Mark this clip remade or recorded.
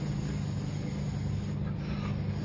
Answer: recorded